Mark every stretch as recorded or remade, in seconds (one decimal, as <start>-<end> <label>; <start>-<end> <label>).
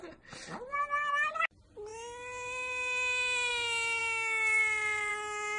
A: 0.0-5.6 recorded